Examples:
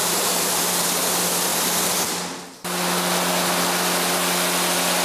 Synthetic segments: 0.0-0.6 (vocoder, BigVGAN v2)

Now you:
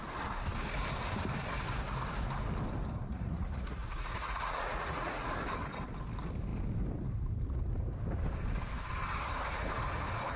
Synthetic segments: 3.1-5.3 (vocoder, Vocos)

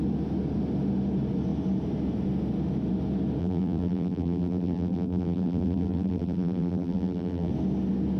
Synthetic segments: 3.4-7.5 (vocoder, BigVGAN v2)

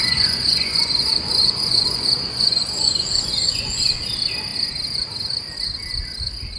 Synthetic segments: 0.0-4.0 (vocoder, Vocos)

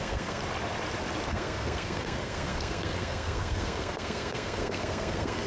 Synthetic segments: 0.0-0.4 (codec, SNAC); 1.3-5.5